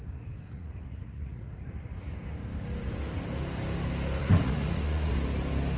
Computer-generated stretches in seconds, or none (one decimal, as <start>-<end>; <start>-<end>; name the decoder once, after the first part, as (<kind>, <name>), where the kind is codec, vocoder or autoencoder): 0.5-2.1 (vocoder, Vocos); 4.2-5.1